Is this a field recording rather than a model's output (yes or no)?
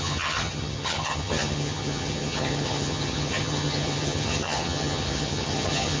no